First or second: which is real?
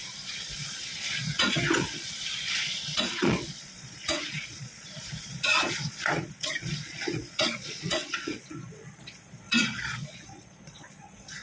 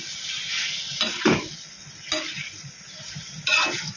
second